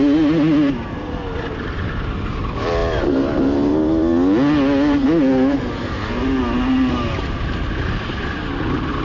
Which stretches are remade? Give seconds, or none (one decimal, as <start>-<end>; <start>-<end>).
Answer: none